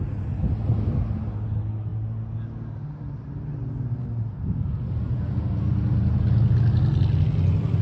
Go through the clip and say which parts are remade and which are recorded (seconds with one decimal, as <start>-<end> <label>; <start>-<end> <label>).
0.0-7.8 recorded